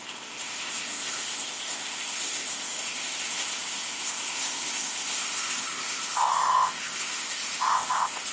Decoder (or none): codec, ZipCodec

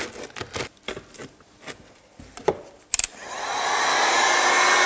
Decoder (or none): none